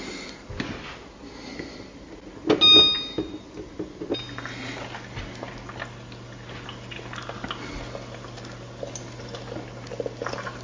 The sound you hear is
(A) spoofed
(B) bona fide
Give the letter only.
B